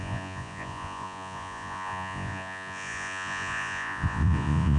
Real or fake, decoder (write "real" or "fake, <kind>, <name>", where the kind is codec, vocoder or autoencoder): fake, vocoder, Vocos